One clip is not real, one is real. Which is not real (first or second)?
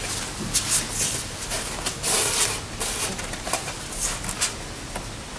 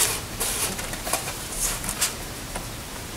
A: second